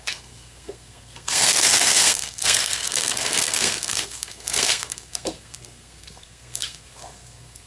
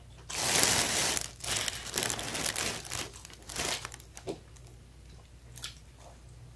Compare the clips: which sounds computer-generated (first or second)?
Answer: first